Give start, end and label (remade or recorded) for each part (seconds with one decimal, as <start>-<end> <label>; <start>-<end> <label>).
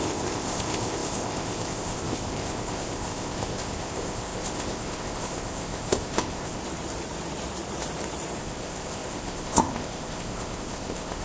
0.0-6.6 remade; 6.6-8.4 recorded; 8.4-11.2 remade